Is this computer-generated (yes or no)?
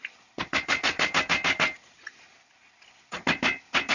no